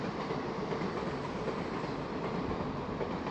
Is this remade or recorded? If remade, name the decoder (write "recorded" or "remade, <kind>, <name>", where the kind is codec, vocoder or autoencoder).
recorded